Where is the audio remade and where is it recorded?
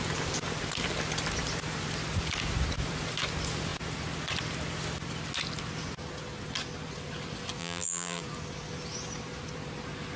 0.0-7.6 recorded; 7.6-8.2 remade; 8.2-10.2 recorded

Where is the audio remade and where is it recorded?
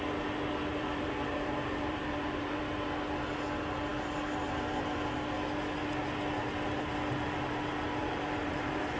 0.0-0.7 recorded; 0.7-2.6 remade; 2.6-8.0 recorded; 8.0-9.0 remade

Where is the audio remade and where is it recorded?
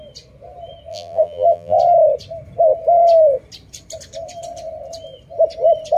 0.0-0.9 recorded; 0.9-1.8 remade; 1.8-6.0 recorded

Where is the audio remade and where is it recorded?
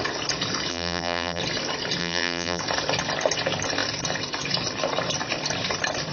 0.0-0.7 recorded; 0.7-1.4 remade; 1.4-2.0 recorded; 2.0-2.6 remade; 2.6-6.1 recorded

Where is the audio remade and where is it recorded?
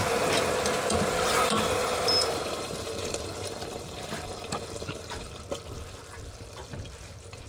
0.0-1.8 recorded; 1.8-5.3 remade; 5.3-7.5 recorded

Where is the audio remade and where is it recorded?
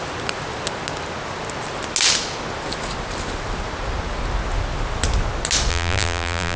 0.0-5.7 recorded; 5.7-6.6 remade